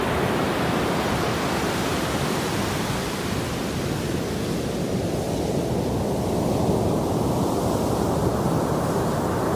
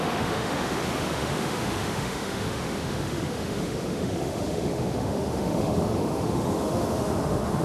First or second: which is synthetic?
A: second